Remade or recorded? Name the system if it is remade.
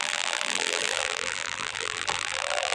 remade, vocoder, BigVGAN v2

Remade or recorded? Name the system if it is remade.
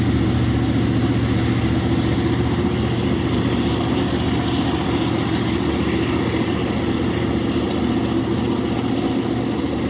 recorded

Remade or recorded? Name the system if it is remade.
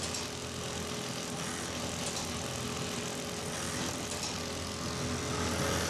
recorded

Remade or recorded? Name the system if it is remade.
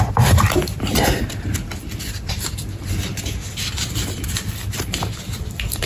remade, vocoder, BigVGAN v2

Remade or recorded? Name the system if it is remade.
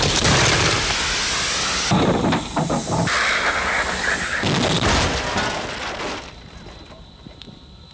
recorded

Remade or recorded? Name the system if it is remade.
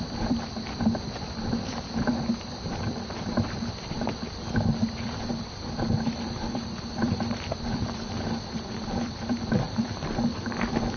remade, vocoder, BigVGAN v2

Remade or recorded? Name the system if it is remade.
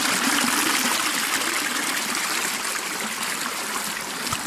remade, vocoder, BigVGAN v2